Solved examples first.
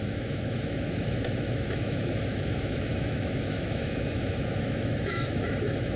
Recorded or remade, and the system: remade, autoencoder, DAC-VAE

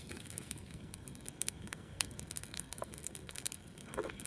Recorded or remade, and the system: remade, codec, SNAC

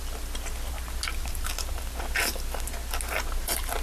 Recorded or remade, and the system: recorded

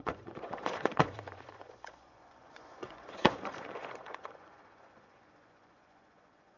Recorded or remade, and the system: remade, vocoder, Vocos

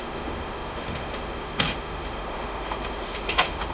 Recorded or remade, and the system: remade, autoencoder, DAC-VAE